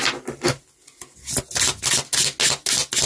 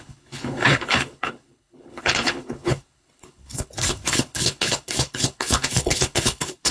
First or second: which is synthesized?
second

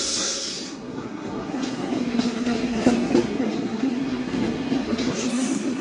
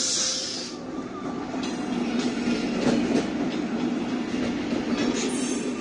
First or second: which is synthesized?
first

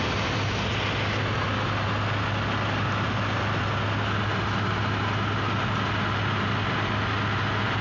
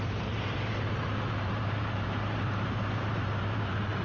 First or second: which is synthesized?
second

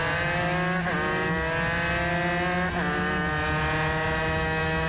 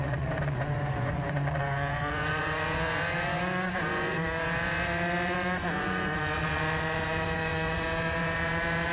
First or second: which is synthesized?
second